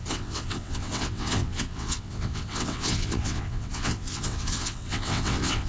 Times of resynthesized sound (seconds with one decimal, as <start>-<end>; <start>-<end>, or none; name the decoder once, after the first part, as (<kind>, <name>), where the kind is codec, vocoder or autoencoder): 0.0-5.7 (vocoder, WaveNeXt)